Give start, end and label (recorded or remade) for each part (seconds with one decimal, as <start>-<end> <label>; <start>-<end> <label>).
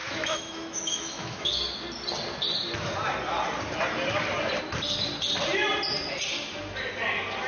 0.0-1.5 remade; 1.5-7.5 recorded